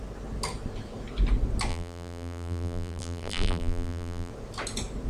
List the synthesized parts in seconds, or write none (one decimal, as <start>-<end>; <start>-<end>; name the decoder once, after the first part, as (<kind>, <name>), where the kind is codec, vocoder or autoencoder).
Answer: 1.7-4.3 (vocoder, BigVGAN v2)